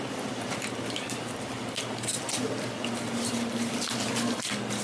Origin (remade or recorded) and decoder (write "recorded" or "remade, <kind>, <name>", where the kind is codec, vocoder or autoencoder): recorded